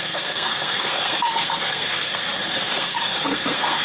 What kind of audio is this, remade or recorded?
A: remade